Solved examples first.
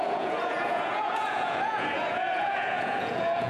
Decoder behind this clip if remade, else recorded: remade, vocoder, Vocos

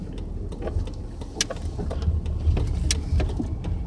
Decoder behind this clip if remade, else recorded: recorded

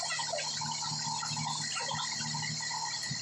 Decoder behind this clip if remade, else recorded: recorded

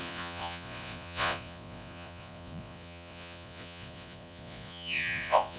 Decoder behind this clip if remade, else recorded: remade, vocoder, Vocos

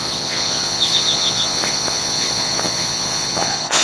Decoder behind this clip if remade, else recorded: remade, vocoder, Vocos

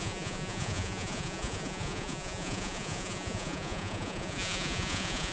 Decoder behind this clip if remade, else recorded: remade, vocoder, Vocos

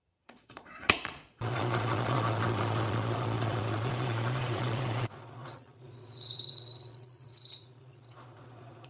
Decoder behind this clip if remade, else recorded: remade, vocoder, Vocos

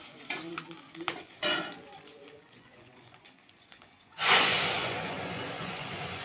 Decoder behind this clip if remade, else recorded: remade, vocoder, Vocos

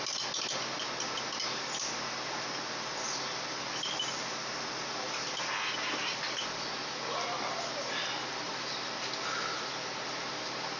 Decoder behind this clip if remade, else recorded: recorded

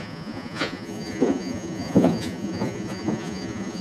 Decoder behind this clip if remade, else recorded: remade, vocoder, Vocos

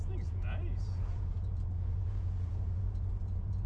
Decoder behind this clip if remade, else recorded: remade, vocoder, Vocos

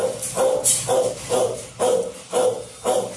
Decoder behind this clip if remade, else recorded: recorded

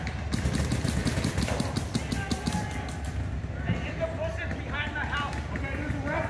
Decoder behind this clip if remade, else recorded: recorded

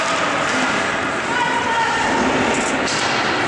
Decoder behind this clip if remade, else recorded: recorded